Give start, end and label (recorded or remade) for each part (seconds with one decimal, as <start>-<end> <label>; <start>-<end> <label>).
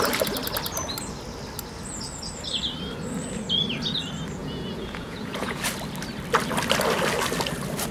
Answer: 0.0-4.4 recorded; 4.4-5.6 remade; 5.6-7.9 recorded